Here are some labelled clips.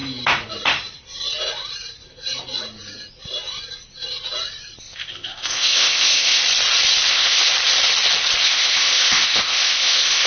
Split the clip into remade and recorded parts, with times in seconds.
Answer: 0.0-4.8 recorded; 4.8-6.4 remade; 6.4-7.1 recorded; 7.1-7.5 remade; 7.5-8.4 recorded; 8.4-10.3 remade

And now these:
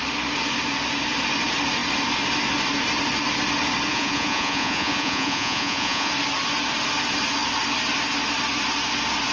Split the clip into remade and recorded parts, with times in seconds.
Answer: 0.0-3.9 recorded; 3.9-6.1 remade; 6.1-9.3 recorded

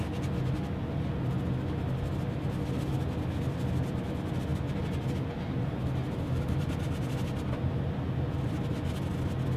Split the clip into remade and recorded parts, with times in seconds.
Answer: 0.0-9.6 recorded

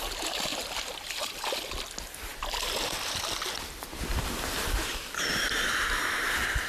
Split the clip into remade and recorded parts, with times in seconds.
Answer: 0.0-0.5 recorded; 0.5-1.7 remade; 1.7-4.1 recorded; 4.1-5.7 remade; 5.7-6.7 recorded

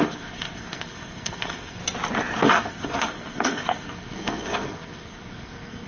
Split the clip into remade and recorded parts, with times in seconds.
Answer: 0.0-1.8 remade; 1.8-2.4 recorded; 2.4-5.9 remade

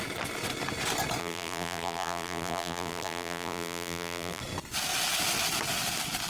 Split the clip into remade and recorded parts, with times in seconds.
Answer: 0.0-1.2 recorded; 1.2-4.4 remade; 4.4-6.3 recorded